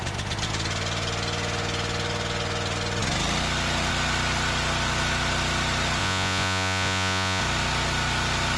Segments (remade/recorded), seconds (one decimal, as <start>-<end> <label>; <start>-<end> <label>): 0.0-6.0 recorded; 6.0-7.4 remade; 7.4-8.6 recorded